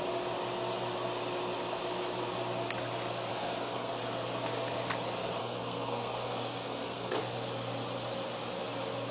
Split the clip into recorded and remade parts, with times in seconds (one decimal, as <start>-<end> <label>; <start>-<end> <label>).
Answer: 0.0-3.3 recorded; 3.3-3.9 remade; 3.9-5.4 recorded; 5.4-7.2 remade; 7.2-9.1 recorded